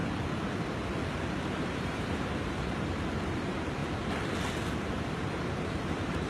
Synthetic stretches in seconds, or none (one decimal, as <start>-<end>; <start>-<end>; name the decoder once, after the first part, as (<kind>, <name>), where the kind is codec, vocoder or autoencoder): 1.5-3.8 (vocoder, BigVGAN v2); 4.8-6.3